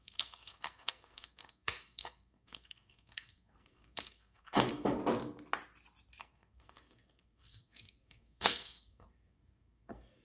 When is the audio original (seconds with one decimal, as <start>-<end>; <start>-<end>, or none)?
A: 5.0-6.2